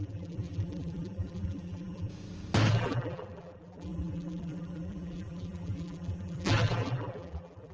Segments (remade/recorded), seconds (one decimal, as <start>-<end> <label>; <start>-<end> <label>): 0.0-2.1 remade; 2.1-2.7 recorded; 2.7-7.7 remade